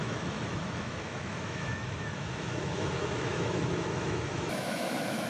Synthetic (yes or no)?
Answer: yes